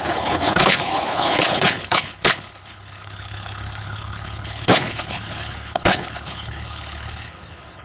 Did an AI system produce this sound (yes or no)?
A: yes